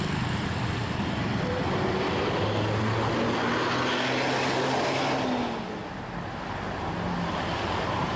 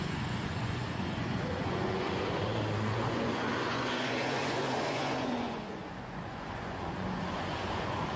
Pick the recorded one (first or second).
first